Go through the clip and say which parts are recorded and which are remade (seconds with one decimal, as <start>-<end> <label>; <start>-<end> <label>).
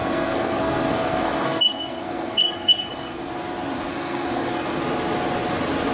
0.0-3.3 remade; 3.3-3.9 recorded; 3.9-4.8 remade; 4.8-5.9 recorded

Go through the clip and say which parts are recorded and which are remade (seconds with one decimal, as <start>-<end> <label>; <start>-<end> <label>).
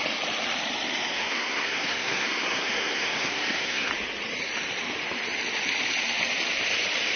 0.0-1.1 recorded; 1.1-3.9 remade; 3.9-7.2 recorded